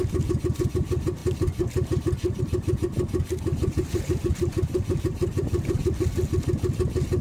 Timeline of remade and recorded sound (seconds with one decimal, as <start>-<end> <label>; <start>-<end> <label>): 0.0-3.5 recorded; 3.5-5.9 remade; 5.9-7.2 recorded